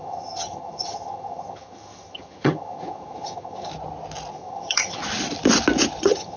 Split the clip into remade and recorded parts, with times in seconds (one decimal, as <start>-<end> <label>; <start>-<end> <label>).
0.0-3.7 remade; 3.7-4.3 recorded; 4.3-5.0 remade; 5.0-6.0 recorded; 6.0-6.4 remade